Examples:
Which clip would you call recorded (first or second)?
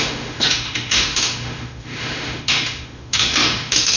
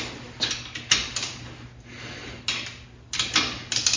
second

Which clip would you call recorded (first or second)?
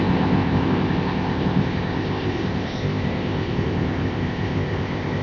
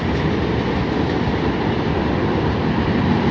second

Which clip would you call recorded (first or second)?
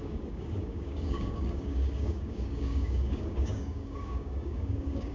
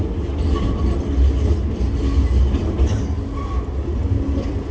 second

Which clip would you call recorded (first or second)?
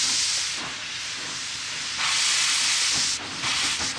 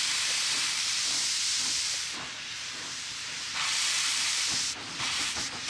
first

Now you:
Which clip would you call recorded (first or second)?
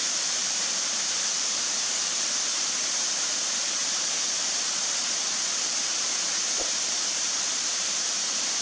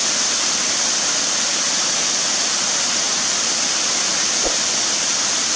second